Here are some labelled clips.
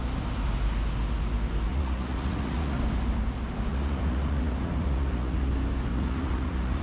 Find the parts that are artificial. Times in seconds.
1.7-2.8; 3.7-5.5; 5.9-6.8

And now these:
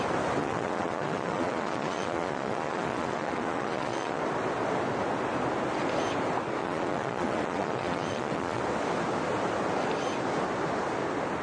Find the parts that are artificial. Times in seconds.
0.4-4.2; 6.6-8.6

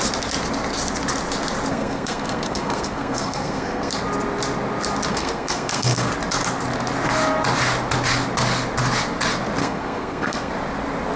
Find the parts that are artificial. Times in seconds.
1.7-3.9; 5.1-6.1; 9.6-10.5